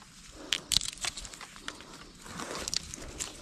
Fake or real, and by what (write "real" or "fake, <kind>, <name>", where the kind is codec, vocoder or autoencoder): real